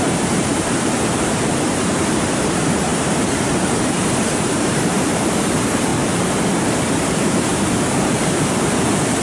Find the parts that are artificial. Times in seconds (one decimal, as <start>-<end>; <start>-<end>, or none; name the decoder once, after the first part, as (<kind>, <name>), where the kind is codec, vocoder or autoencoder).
0.0-5.9 (vocoder, BigVGAN v2)